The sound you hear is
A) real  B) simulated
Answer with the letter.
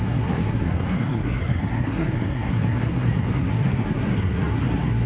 B